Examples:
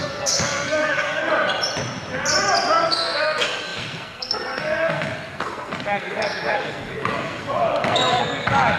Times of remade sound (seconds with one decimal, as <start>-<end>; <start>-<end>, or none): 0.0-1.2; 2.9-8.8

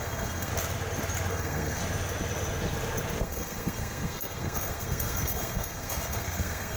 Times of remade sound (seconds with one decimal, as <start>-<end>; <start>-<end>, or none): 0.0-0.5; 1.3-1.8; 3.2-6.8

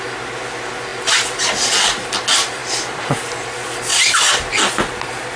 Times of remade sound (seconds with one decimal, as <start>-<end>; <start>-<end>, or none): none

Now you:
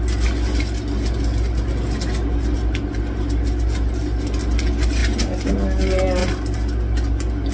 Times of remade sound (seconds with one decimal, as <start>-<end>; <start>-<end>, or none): none